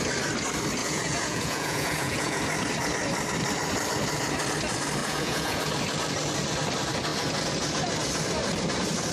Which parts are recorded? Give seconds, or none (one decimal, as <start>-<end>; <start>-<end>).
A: 0.0-0.8; 2.4-5.0; 5.6-9.1